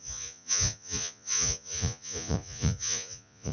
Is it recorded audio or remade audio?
remade